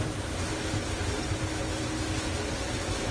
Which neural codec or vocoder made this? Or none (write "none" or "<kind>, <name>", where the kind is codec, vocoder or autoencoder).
none